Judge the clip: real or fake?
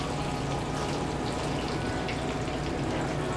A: real